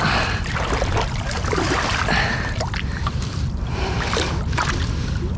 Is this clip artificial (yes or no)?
no